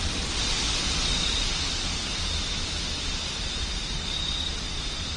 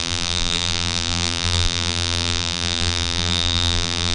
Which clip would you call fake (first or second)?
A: second